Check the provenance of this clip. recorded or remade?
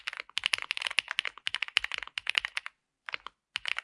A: recorded